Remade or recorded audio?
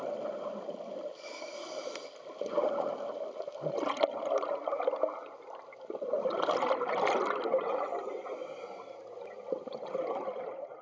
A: recorded